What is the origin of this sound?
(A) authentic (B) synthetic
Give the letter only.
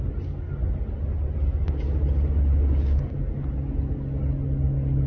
A